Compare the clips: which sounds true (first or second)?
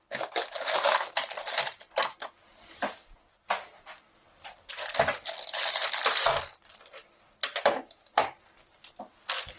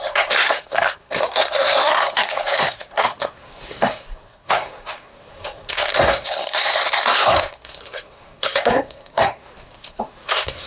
first